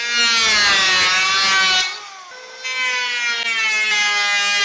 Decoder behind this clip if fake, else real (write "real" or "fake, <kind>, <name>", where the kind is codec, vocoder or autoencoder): real